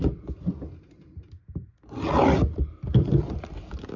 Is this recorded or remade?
recorded